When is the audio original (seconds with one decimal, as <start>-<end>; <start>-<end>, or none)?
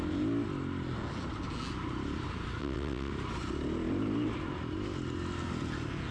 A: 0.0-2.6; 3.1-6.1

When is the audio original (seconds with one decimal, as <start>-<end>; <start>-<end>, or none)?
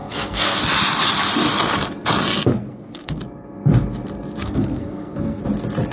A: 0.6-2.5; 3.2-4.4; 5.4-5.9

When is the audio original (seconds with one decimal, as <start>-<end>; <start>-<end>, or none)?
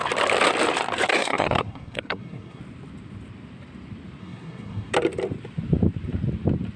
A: 0.0-1.1; 2.6-4.2; 4.9-6.8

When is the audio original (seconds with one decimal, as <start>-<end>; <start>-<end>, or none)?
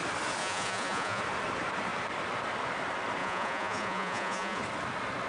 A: 0.0-0.4; 1.2-3.2; 4.6-5.3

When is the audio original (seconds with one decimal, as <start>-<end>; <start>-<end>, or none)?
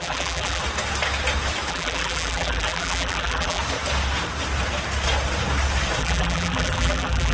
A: 0.6-1.7; 3.6-6.0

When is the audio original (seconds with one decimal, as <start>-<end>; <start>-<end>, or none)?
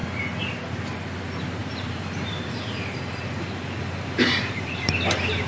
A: 0.0-1.6; 4.9-5.5